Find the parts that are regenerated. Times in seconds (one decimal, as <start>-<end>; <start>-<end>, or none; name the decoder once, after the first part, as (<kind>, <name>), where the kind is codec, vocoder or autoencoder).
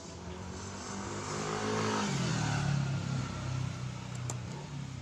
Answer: none